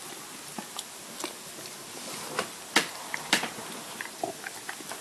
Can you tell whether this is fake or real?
real